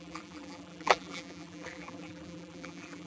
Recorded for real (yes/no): no